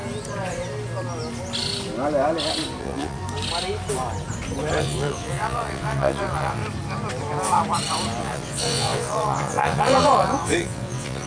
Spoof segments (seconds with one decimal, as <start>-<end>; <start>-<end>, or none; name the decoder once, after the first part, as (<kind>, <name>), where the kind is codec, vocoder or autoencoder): 2.8-3.2 (vocoder, WaveNeXt); 4.8-6.6; 8.2-11.3